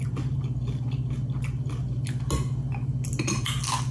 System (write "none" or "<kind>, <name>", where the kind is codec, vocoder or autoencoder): none